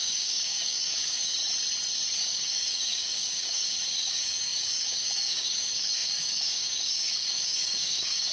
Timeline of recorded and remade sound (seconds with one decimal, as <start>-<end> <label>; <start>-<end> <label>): 0.0-1.3 remade; 1.3-2.2 recorded; 2.2-8.3 remade